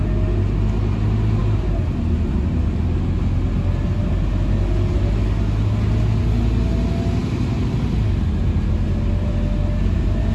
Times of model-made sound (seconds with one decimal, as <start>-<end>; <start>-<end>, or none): none